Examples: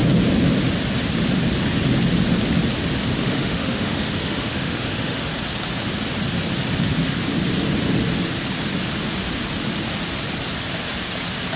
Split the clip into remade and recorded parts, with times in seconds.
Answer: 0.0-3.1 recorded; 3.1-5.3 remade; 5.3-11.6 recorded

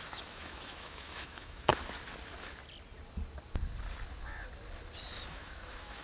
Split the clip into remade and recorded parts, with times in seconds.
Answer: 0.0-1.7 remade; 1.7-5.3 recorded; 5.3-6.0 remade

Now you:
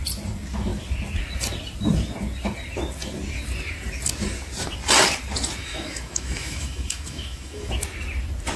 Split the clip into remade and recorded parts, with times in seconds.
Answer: 0.0-5.6 recorded; 5.6-7.7 remade; 7.7-8.6 recorded

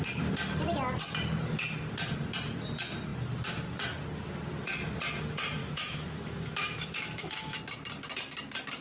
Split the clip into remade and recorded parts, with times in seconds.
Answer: 0.0-5.6 recorded; 5.6-7.6 remade; 7.6-8.8 recorded